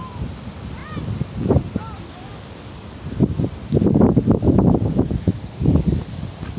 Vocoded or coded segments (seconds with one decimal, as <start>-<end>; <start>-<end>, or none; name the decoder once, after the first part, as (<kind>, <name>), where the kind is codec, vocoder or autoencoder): none